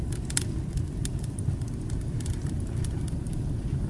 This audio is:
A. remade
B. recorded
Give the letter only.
B